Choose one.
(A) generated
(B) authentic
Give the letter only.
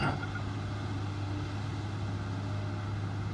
B